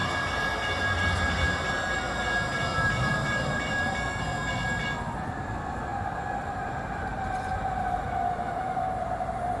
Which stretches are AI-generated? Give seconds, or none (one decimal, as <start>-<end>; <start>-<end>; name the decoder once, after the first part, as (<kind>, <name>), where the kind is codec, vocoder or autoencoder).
2.7-4.2 (vocoder, BigVGAN v2); 5.9-9.6